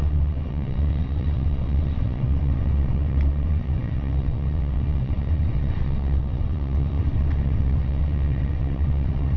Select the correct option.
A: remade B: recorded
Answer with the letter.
A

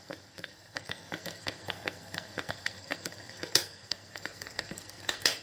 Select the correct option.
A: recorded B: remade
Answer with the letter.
B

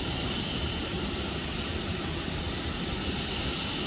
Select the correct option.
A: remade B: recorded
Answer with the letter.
A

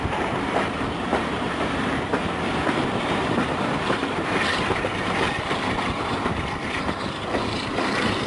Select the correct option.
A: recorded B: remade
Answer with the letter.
B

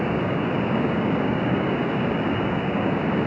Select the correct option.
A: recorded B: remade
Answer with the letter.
B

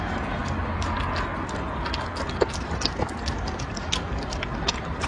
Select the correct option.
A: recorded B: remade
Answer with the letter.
A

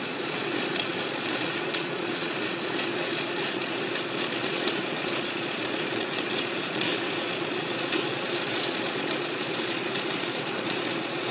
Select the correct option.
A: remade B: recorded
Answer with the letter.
A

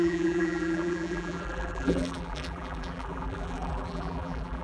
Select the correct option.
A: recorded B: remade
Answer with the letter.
B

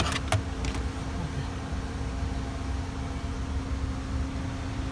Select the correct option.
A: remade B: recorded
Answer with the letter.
B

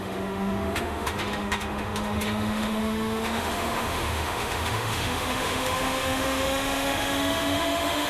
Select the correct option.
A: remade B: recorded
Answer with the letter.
A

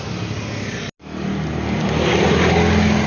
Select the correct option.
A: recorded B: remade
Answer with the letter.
A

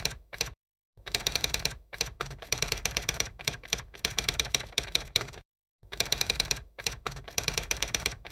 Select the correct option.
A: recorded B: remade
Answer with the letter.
B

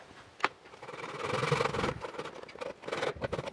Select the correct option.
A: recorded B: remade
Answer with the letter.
A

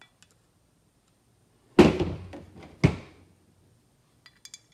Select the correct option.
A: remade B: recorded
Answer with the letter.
B